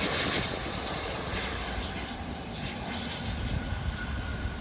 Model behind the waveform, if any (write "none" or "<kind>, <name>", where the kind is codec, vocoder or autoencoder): none